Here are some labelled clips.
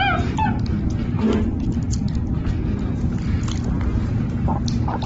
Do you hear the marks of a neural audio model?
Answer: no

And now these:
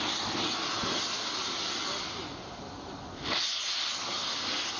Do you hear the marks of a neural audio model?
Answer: no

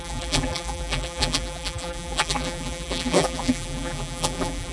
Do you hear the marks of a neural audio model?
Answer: yes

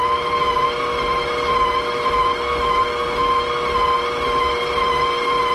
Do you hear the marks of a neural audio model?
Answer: no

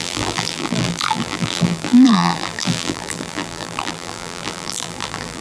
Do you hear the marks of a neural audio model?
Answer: yes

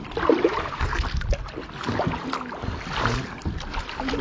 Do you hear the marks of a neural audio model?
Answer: no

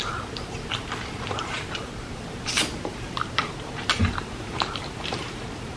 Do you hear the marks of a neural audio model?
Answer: yes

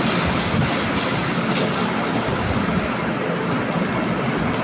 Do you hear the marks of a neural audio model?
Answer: no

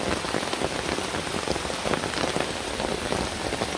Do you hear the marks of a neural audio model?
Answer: yes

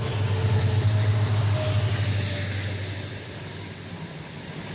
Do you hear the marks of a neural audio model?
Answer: no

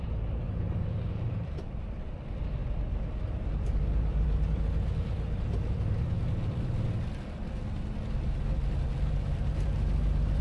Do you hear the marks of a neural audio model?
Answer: yes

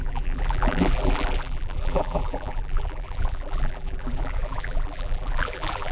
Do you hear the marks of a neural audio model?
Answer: yes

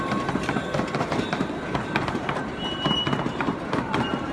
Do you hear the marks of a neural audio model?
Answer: yes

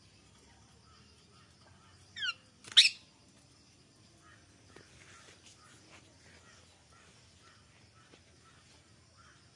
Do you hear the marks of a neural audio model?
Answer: no